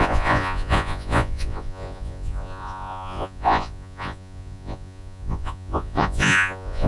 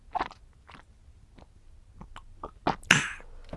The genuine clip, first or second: second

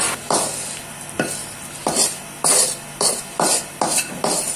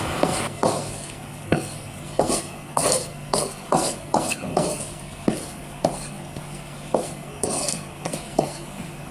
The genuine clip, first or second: first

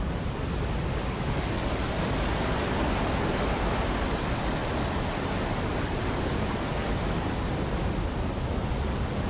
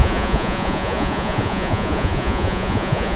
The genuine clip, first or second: first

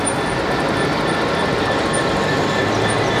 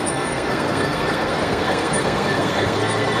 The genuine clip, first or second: first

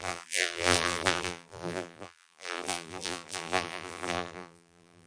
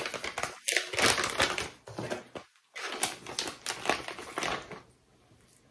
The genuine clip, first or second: second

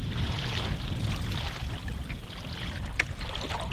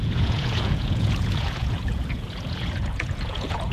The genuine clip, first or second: first